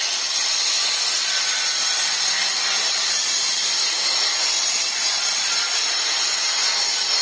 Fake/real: real